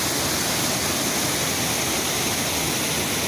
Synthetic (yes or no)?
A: no